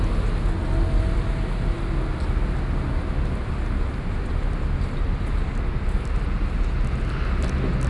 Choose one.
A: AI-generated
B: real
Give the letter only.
B